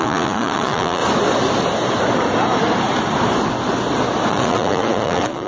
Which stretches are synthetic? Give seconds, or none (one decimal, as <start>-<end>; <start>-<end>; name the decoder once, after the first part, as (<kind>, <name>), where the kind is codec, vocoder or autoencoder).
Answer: 0.0-1.0 (vocoder, Vocos); 4.3-5.5